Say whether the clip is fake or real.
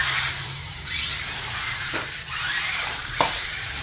fake